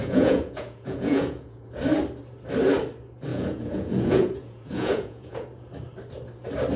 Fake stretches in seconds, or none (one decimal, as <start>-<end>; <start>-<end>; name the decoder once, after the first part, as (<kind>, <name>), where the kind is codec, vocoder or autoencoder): 0.0-1.8 (vocoder, Vocos); 3.3-5.7